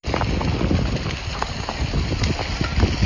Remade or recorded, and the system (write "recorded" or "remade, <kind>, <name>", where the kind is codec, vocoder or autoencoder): recorded